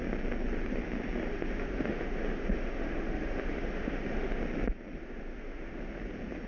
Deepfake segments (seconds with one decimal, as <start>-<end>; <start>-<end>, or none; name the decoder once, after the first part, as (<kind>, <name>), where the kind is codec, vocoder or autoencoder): 1.3-4.4 (autoencoder, DAC-VAE); 5.0-6.0